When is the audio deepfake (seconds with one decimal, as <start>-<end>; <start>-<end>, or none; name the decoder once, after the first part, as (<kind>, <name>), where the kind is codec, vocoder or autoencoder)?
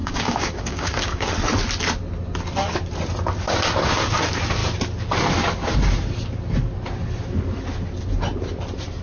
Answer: 0.0-1.3 (codec, DAC)